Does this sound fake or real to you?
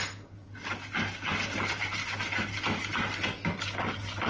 real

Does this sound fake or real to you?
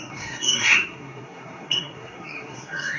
fake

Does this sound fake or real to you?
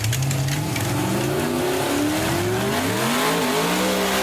real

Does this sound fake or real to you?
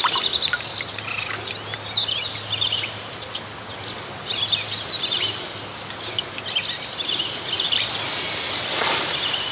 real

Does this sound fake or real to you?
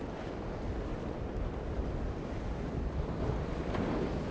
real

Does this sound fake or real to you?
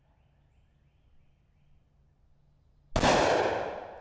real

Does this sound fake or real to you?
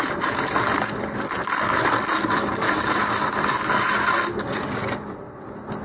real